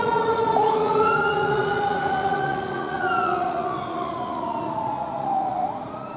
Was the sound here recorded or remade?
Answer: remade